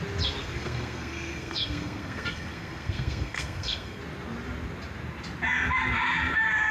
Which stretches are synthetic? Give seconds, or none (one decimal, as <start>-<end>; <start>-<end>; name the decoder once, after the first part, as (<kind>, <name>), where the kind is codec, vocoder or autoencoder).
0.4-4.0 (codec, SNAC)